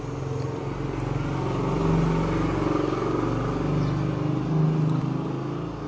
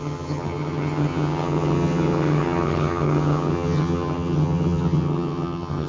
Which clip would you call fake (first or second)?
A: second